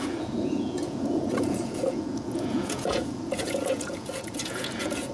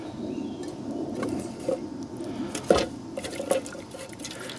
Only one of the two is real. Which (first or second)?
second